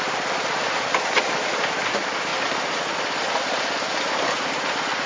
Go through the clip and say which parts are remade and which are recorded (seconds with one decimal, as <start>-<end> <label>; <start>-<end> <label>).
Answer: 0.0-5.1 recorded